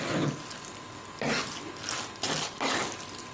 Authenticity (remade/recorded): recorded